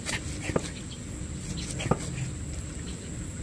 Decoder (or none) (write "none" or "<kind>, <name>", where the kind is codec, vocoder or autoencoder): none